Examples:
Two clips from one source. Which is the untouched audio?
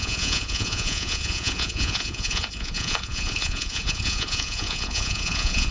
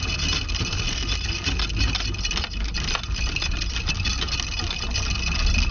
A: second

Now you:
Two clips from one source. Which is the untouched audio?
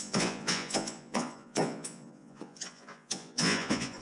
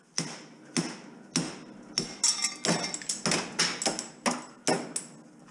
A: second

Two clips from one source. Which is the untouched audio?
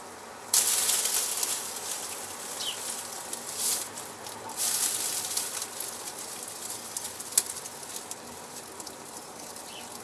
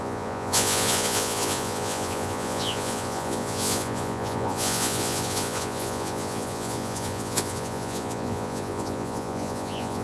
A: first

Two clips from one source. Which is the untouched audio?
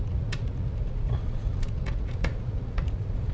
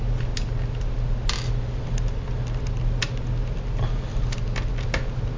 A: second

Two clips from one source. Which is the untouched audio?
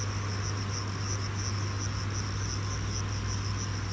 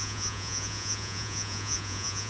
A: first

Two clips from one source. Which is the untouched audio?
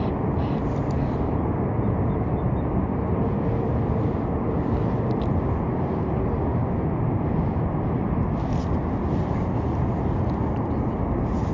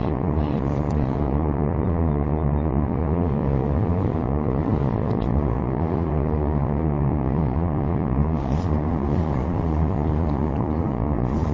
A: first